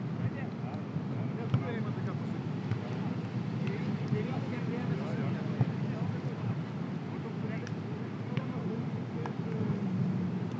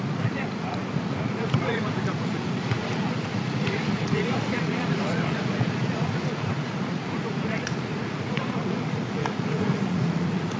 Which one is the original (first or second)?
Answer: first